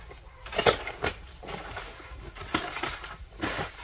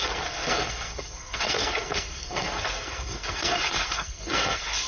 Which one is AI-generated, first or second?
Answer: second